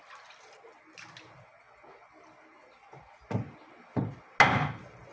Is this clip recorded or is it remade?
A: recorded